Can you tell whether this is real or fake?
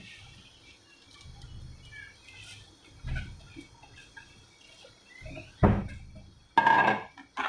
real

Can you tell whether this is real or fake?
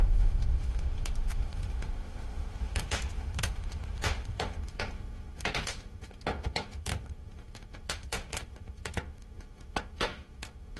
fake